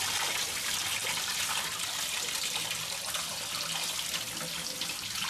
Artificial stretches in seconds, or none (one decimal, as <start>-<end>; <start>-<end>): none